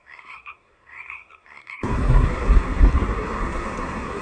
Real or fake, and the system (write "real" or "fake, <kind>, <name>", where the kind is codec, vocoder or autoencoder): fake, codec, SNAC